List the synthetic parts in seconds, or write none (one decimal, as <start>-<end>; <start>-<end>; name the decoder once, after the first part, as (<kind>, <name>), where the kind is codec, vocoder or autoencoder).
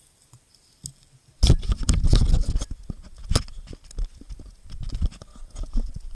none